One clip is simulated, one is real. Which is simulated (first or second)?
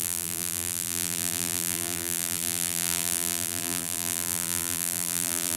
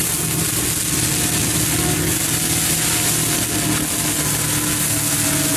first